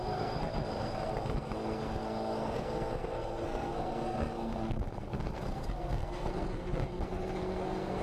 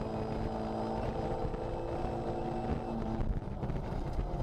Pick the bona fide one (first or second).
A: second